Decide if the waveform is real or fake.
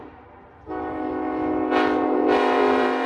fake